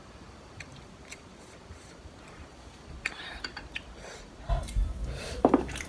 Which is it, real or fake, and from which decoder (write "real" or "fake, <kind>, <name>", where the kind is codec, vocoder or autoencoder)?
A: fake, vocoder, BigVGAN v2